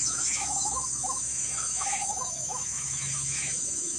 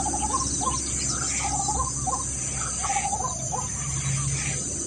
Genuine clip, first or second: second